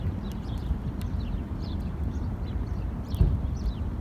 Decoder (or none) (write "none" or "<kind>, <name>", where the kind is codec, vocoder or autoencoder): vocoder, BigVGAN v2